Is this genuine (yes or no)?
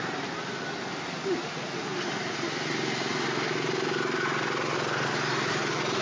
yes